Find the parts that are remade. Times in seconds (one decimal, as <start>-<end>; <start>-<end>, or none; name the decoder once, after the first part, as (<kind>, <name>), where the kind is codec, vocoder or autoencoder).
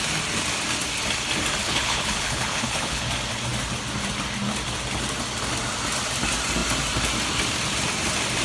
1.6-3.0 (codec, HILCodec)